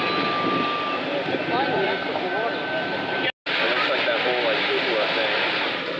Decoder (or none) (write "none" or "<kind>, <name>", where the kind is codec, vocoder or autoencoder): none